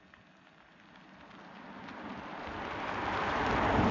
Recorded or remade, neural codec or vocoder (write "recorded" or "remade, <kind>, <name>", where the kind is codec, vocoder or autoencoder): recorded